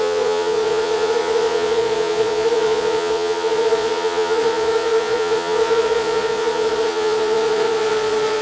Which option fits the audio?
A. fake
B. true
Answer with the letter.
A